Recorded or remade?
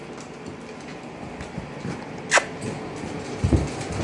recorded